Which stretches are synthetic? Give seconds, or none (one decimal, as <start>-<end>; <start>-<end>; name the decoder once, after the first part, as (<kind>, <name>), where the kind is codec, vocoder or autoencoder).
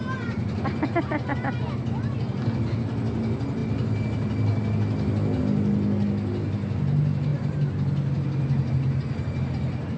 none